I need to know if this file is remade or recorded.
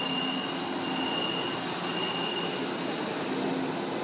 recorded